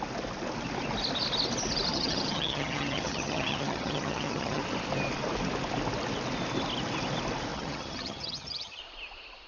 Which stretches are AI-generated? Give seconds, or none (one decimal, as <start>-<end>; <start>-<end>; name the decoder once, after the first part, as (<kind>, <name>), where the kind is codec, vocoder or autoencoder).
1.9-4.6 (vocoder, HiFi-GAN); 7.5-8.8